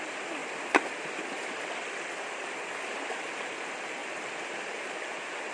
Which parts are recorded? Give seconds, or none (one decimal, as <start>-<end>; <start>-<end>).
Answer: 4.0-5.5